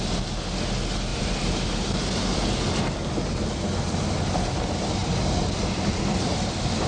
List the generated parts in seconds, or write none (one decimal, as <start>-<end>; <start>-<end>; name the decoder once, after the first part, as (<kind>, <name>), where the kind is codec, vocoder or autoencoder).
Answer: 1.1-2.8 (vocoder, BigVGAN v2)